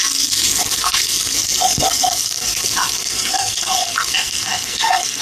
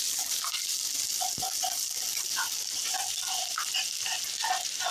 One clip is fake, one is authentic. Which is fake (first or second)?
first